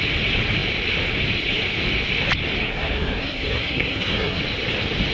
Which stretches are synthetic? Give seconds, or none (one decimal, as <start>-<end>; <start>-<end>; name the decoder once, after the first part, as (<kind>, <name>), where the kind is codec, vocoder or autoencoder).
2.6-4.4 (codec, SNAC)